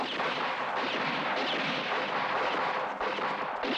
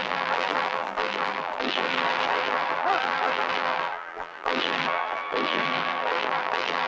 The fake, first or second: second